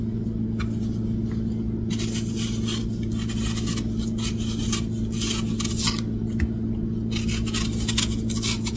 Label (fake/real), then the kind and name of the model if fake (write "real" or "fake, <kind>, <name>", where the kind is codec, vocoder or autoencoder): real